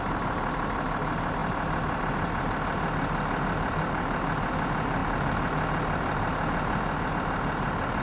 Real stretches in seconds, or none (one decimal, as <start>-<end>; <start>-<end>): 0.0-1.4; 2.0-8.0